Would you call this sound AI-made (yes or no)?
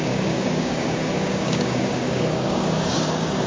yes